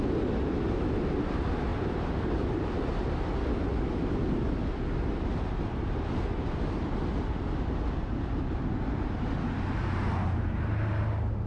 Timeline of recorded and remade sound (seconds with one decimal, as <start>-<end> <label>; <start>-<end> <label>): 0.0-11.5 recorded